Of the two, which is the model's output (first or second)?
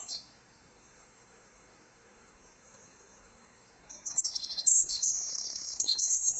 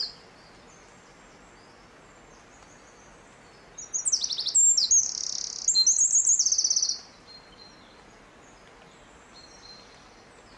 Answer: first